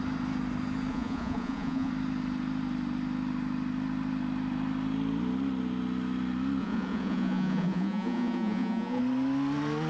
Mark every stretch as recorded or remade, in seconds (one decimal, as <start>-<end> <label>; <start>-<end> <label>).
0.0-0.9 recorded; 0.9-1.9 remade; 1.9-6.6 recorded; 6.6-9.0 remade; 9.0-9.9 recorded